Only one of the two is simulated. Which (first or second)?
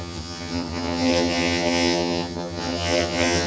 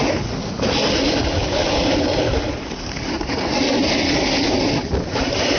first